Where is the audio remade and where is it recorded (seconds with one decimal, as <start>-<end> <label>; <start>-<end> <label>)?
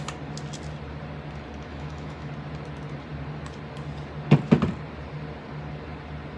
0.0-1.7 recorded; 1.7-2.3 remade; 2.3-6.4 recorded